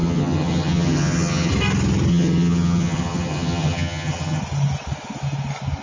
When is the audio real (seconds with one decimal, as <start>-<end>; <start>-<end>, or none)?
1.5-2.1; 4.4-5.8